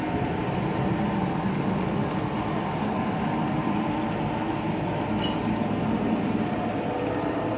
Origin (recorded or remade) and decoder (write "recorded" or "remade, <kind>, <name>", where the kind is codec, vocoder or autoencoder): recorded